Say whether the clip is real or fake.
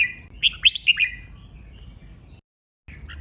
real